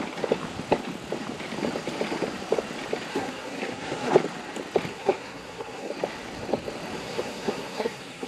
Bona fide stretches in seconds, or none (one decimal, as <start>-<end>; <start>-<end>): 0.0-3.1; 4.1-4.9; 5.9-7.0